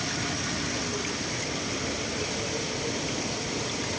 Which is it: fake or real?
real